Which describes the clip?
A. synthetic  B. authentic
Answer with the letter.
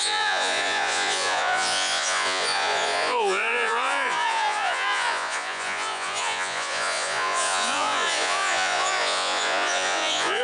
A